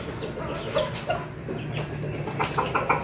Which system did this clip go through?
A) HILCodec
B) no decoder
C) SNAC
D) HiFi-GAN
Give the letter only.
B